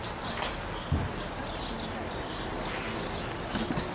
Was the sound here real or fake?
real